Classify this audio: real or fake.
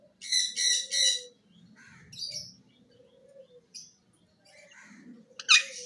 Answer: real